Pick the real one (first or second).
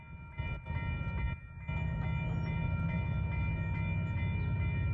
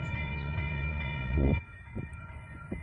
first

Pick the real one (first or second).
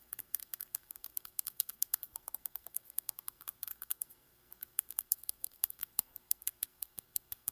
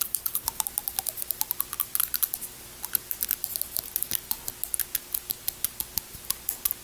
second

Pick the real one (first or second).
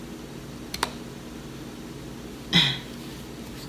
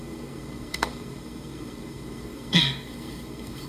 first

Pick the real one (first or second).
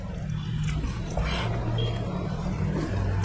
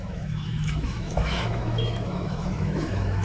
first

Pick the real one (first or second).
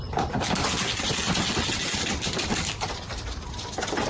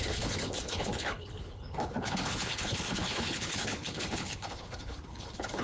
first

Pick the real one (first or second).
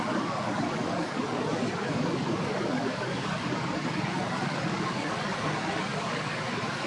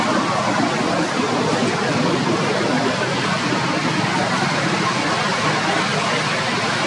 second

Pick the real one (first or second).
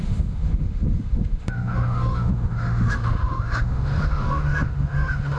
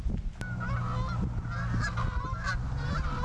second